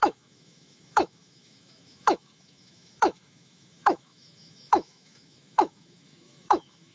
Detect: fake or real fake